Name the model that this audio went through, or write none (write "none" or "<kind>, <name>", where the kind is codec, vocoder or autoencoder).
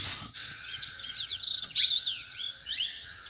vocoder, WaveNeXt